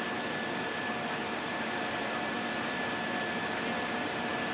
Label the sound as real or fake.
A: real